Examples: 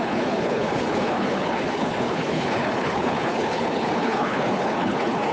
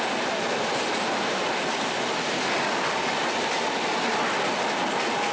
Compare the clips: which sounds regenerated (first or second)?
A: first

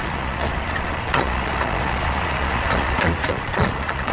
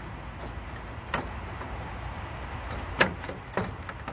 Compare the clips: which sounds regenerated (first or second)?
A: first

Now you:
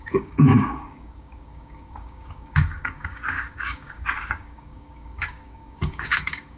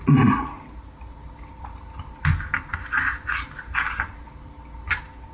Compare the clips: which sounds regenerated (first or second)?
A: first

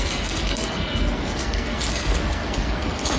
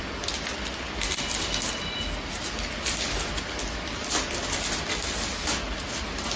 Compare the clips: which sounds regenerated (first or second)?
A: first